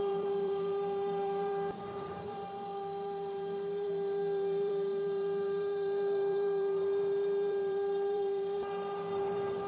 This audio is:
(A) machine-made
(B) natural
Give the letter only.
A